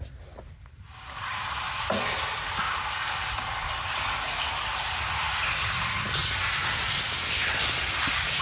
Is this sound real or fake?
real